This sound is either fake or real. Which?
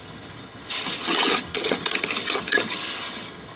fake